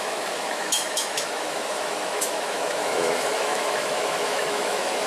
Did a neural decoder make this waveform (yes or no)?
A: yes